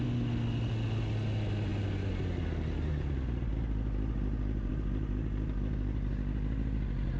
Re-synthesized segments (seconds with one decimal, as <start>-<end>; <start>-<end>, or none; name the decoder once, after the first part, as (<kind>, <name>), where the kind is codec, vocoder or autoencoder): none